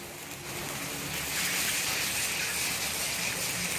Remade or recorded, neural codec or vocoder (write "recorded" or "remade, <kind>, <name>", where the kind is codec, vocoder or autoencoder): recorded